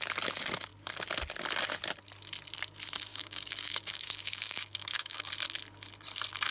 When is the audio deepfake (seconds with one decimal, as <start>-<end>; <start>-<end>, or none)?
3.1-5.3